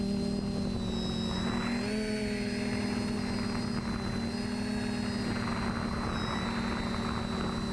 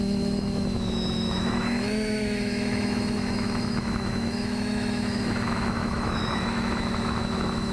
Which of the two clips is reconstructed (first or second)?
second